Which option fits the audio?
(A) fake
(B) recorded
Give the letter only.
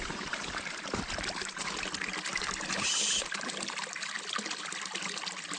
B